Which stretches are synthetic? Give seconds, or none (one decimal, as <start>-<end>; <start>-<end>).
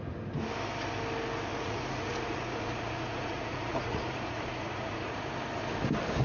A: 1.5-5.2